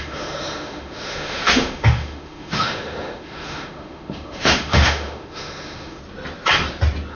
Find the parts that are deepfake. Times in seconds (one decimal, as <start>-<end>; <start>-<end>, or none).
0.0-6.0